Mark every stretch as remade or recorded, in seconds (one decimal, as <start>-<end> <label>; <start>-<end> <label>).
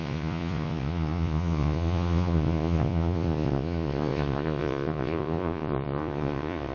0.0-6.7 remade